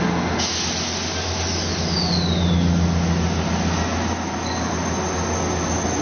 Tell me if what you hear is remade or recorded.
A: recorded